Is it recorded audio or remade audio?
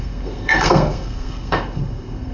remade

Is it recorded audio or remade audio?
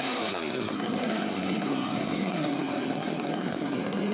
remade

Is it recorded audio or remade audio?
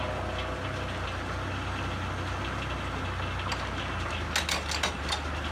recorded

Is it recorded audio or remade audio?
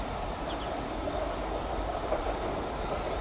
recorded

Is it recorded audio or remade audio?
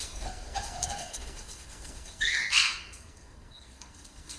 remade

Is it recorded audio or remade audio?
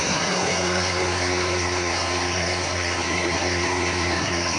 remade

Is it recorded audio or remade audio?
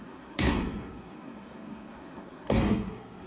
remade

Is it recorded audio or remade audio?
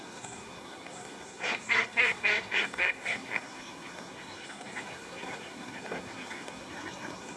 remade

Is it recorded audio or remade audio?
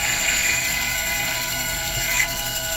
remade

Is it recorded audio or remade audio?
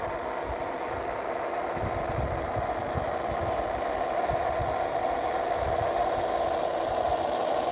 recorded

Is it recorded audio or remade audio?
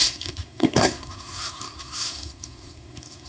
remade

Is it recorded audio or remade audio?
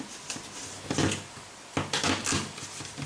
recorded